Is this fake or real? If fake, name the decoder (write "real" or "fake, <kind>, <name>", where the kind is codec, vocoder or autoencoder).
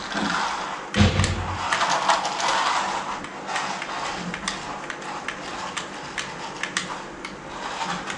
real